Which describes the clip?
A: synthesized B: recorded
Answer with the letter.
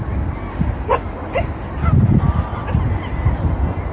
B